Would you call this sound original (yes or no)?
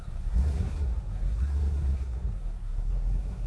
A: no